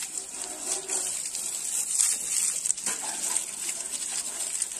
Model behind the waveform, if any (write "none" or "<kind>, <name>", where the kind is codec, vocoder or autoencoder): none